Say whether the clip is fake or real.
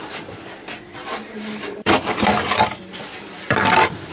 fake